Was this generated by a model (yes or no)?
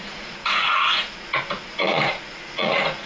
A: yes